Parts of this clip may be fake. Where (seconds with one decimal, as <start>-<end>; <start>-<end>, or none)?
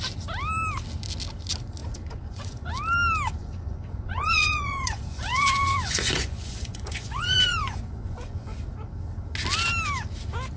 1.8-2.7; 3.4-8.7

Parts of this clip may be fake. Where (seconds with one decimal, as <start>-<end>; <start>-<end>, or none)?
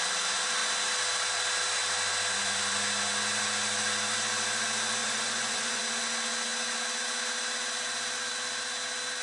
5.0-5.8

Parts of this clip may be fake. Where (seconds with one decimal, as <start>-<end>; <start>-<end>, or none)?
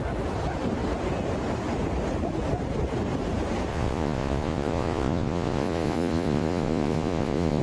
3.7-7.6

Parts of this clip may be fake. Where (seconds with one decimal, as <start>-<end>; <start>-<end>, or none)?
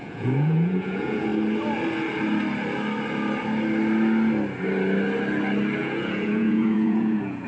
0.0-1.3; 5.8-7.5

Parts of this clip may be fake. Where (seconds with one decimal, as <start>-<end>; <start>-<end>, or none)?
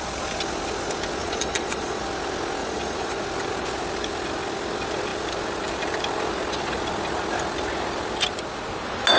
1.2-2.0; 2.6-3.2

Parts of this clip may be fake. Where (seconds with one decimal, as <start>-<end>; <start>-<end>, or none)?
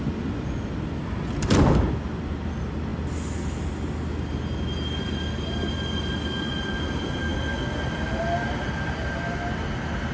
none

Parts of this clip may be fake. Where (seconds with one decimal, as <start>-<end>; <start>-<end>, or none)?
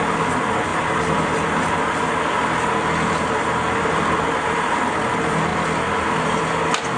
none